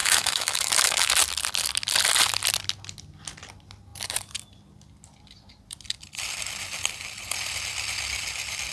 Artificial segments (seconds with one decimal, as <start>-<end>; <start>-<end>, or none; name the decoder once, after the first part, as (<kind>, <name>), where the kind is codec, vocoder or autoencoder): 0.0-1.1 (autoencoder, DAC-VAE)

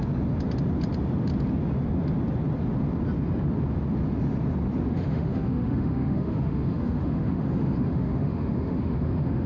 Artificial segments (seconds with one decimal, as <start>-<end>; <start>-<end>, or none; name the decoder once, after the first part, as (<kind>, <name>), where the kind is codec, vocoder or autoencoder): 4.9-9.5 (autoencoder, DAC-VAE)

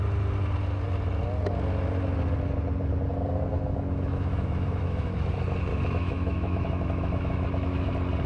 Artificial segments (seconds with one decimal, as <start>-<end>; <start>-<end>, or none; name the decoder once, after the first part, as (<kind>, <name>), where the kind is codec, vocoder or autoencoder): 3.5-5.1 (autoencoder, DAC-VAE); 5.7-7.9

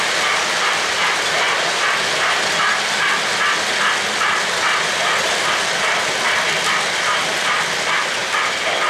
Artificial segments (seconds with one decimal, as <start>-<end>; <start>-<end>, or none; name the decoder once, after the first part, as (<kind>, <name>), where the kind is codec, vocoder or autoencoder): none

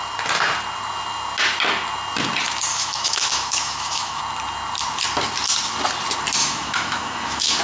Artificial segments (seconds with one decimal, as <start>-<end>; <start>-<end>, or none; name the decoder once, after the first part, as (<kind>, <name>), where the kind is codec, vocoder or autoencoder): 2.7-4.2 (autoencoder, DAC-VAE); 6.4-7.6

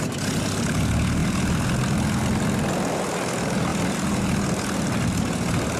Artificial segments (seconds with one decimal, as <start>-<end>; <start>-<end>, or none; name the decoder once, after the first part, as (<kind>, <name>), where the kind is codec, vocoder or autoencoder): none

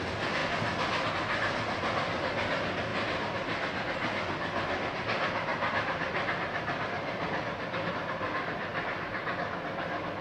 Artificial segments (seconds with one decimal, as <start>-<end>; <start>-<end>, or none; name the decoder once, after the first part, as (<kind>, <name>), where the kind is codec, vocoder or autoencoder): none

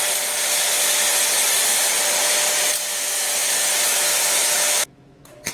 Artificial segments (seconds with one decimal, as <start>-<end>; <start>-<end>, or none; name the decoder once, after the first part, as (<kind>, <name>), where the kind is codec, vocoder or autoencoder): 2.9-3.5 (autoencoder, DAC-VAE); 3.9-5.5